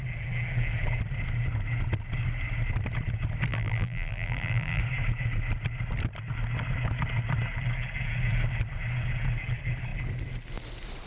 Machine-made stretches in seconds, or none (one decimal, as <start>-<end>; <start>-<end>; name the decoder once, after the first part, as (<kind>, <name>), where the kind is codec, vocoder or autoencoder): 3.5-4.8 (vocoder, BigVGAN v2)